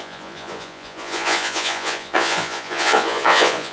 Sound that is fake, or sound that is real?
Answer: fake